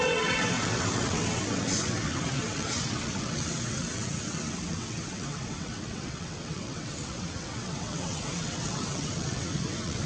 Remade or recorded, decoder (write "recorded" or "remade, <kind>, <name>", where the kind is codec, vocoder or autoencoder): remade, vocoder, WaveNeXt